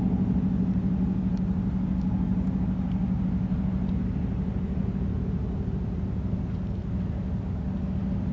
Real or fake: real